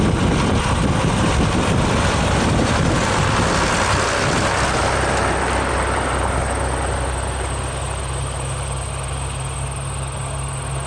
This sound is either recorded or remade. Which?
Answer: recorded